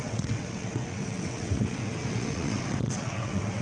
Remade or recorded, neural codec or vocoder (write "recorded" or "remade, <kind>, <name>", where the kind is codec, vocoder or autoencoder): remade, vocoder, WaveNeXt